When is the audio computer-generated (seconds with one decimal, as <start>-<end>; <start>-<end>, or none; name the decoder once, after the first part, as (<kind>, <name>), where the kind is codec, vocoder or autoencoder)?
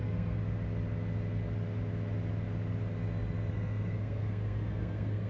0.0-0.4 (codec, SNAC); 3.5-5.3